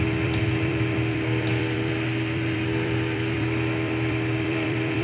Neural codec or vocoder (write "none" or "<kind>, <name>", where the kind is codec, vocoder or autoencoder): vocoder, BigVGAN v2